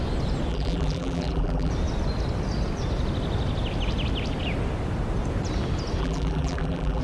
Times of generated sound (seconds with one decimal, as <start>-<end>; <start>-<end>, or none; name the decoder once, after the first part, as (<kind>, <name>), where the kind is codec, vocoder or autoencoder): 0.5-1.7 (vocoder, BigVGAN v2); 6.0-7.0